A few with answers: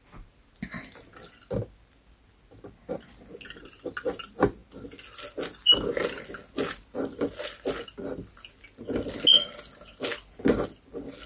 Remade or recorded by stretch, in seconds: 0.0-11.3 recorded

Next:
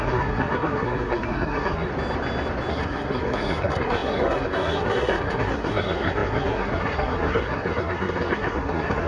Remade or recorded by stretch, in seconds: 0.0-1.9 remade; 1.9-2.7 recorded; 2.7-9.1 remade

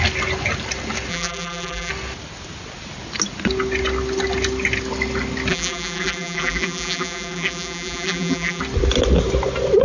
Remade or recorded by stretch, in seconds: 0.0-1.1 recorded; 1.1-1.9 remade; 1.9-5.5 recorded; 5.5-8.6 remade; 8.6-9.8 recorded